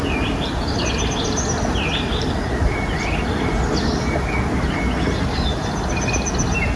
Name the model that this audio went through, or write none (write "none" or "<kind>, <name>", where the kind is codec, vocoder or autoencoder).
none